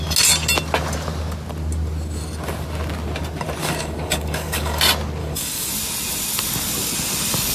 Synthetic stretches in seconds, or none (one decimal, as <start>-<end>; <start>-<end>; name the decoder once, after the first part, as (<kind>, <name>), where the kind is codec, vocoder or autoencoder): 3.6-4.8 (codec, DAC); 5.2-5.7